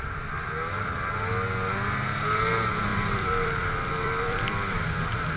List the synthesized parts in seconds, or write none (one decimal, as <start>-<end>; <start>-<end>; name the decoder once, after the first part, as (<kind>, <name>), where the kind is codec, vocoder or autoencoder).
2.9-5.4 (vocoder, BigVGAN v2)

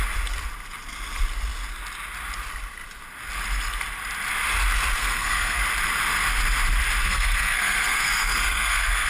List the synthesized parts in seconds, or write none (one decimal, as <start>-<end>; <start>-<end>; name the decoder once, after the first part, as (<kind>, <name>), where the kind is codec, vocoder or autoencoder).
5.0-5.6 (codec, SNAC); 7.0-9.1

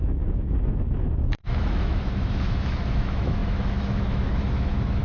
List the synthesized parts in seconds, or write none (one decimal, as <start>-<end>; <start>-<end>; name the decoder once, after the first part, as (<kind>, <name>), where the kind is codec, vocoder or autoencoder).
0.0-5.0 (autoencoder, DAC-VAE)

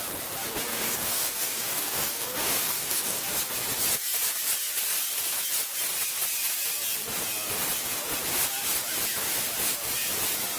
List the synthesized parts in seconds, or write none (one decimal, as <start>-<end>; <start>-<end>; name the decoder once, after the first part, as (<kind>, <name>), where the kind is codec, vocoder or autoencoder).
0.7-3.2 (codec, DAC)

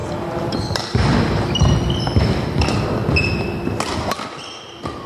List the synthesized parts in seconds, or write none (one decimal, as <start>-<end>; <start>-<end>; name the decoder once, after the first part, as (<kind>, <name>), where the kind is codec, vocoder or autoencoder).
none

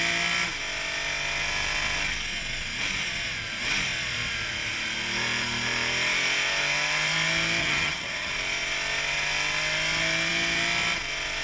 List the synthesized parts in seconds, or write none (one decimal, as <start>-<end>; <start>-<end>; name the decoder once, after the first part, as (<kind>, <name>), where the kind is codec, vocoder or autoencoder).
7.6-8.3 (vocoder, HiFi-GAN)

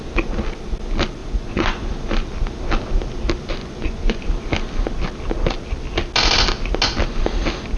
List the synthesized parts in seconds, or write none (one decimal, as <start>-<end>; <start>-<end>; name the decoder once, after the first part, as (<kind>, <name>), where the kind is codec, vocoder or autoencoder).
1.2-1.9 (vocoder, Vocos); 3.6-4.2